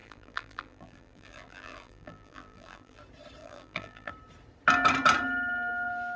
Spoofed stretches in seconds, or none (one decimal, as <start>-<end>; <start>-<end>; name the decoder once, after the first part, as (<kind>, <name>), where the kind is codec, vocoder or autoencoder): 0.0-3.0 (vocoder, BigVGAN v2); 3.4-4.1